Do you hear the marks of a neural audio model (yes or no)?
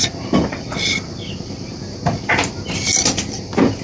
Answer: no